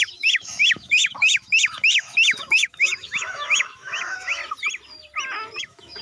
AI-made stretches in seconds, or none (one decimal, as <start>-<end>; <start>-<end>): 0.0-4.4; 5.6-6.0